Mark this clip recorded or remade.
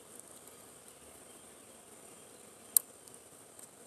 recorded